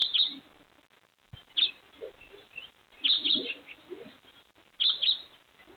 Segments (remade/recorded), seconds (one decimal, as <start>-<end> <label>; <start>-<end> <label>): 0.0-5.8 recorded